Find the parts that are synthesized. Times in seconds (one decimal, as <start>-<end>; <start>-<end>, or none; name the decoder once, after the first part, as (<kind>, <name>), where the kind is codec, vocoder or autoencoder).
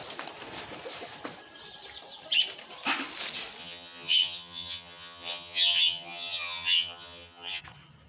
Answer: 3.6-7.6 (vocoder, HiFi-GAN)